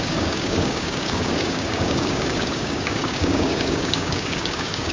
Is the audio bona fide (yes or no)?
no